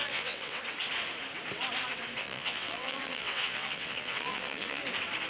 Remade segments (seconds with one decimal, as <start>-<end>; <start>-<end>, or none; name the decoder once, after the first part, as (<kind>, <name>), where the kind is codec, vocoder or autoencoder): 0.0-0.6 (vocoder, WaveNeXt); 2.2-4.8